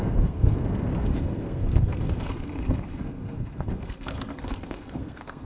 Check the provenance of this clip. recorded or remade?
remade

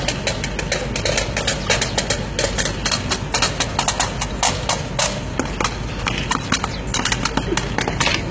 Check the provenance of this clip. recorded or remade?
recorded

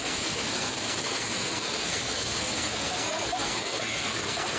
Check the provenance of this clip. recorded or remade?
remade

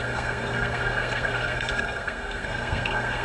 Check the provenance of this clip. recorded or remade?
remade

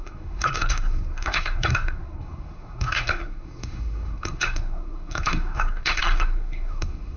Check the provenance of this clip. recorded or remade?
remade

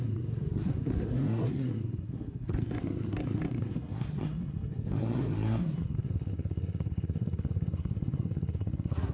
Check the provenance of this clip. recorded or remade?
remade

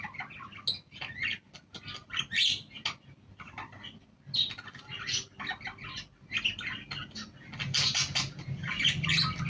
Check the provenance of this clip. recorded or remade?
recorded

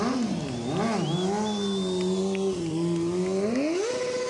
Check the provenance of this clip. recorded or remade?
recorded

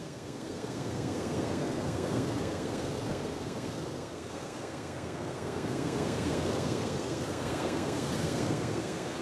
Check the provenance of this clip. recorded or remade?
remade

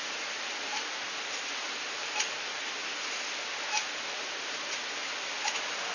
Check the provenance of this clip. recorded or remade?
recorded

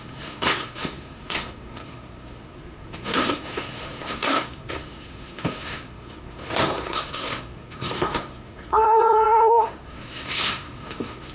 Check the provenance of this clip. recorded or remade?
remade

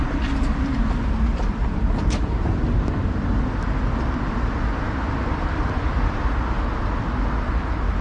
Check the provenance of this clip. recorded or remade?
recorded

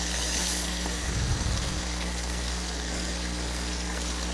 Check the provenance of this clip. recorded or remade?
remade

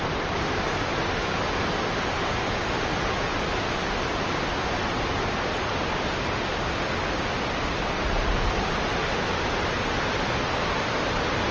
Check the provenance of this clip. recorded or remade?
recorded